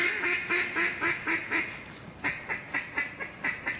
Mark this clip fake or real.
real